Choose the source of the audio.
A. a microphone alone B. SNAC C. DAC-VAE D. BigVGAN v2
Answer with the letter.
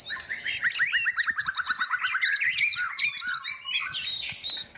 A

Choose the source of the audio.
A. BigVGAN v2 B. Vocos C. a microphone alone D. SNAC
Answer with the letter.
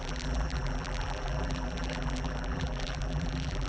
A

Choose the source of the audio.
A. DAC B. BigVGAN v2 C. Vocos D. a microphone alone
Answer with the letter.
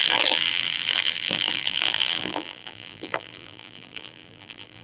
B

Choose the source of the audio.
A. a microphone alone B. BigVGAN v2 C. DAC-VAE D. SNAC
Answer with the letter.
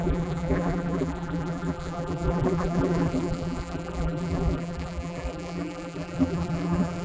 B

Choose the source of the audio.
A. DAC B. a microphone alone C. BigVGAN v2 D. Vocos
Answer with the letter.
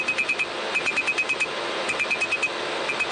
B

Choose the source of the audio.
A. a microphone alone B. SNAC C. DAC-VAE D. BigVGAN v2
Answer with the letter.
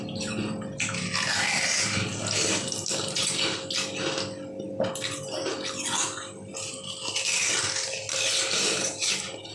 A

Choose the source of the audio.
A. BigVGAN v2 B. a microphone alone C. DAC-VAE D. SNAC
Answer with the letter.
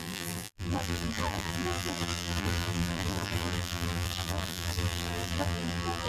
A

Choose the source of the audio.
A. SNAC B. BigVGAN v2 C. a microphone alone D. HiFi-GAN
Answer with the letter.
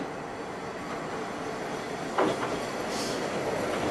C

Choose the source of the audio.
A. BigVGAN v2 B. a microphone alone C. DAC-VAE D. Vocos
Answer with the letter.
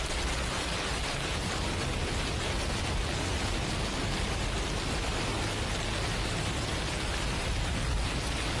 B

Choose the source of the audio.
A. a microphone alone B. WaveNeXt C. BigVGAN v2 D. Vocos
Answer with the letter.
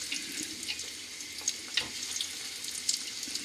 A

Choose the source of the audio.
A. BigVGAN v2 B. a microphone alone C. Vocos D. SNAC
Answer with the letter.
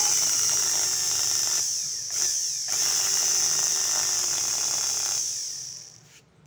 A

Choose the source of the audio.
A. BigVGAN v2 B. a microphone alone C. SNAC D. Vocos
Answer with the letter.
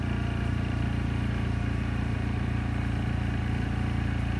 A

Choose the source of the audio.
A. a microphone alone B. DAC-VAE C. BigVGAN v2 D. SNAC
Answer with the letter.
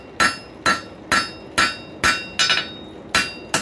A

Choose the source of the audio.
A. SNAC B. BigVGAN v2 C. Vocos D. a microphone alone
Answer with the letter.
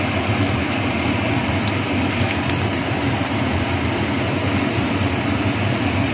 B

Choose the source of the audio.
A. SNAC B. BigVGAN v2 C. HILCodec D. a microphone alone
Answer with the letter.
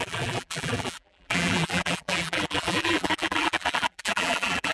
B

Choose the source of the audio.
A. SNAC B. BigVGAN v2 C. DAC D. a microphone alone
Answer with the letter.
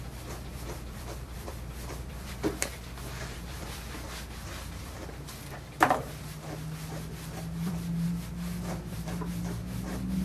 B